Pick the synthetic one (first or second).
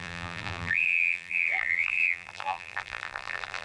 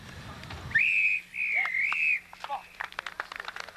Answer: first